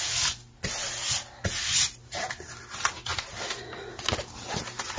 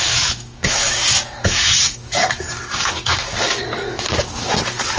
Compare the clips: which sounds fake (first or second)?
second